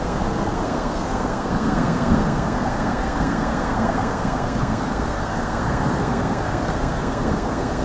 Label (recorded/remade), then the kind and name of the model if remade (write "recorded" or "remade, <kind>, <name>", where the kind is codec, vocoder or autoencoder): remade, codec, SNAC